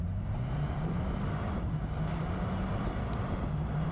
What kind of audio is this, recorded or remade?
remade